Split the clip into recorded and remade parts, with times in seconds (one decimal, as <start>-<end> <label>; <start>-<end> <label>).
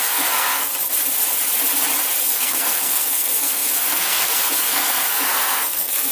0.0-0.7 remade; 0.7-2.2 recorded; 2.2-6.1 remade